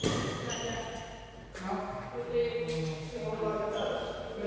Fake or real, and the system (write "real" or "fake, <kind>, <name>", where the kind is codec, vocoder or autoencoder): real